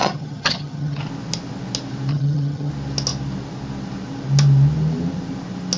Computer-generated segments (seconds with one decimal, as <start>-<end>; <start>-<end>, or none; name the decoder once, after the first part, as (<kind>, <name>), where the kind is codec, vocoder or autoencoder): 0.0-1.0 (vocoder, HiFi-GAN); 2.1-2.7

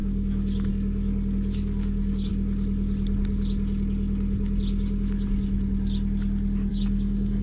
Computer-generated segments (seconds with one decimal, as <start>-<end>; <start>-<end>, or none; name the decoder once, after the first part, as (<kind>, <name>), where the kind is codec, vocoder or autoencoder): 0.0-2.3 (codec, DAC); 6.7-7.4